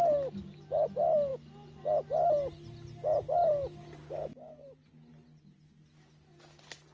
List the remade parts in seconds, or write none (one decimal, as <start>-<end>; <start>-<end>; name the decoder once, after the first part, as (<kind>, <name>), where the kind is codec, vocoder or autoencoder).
none